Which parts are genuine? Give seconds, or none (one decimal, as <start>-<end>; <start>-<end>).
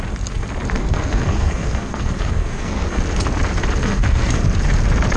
0.0-0.8; 3.0-3.8; 4.4-5.2